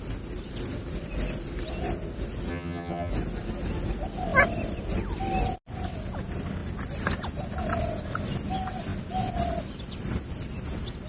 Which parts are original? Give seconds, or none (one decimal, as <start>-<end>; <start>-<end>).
0.0-2.5; 3.1-11.1